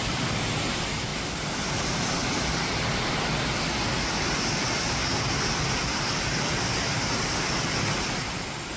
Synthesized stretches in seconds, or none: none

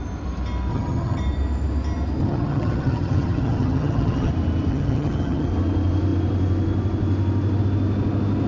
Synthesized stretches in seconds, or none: 0.7-1.2 (vocoder, HiFi-GAN); 2.2-4.3; 4.7-5.5

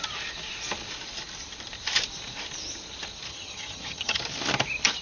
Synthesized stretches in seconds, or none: 3.3-4.2 (vocoder, HiFi-GAN)

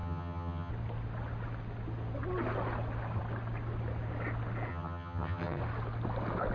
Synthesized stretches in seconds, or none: 0.0-0.7 (vocoder, HiFi-GAN); 4.7-5.6

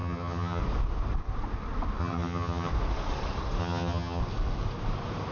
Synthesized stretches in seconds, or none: 0.0-0.6 (vocoder, HiFi-GAN); 2.0-2.7; 3.6-4.2

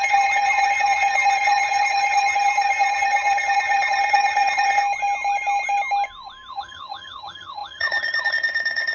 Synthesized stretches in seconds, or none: 0.0-4.8 (vocoder, HiFi-GAN); 6.5-8.9

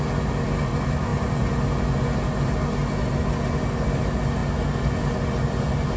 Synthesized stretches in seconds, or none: none

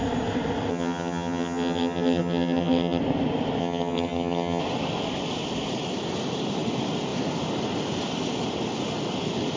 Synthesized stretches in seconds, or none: 0.7-3.0 (vocoder, HiFi-GAN); 3.6-4.6